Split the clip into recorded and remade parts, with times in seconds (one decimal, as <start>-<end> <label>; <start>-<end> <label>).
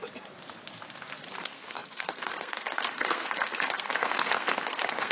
0.0-1.4 recorded; 1.4-5.1 remade